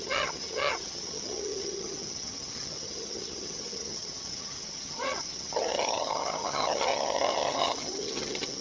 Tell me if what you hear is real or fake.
fake